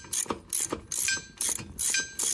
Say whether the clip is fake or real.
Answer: real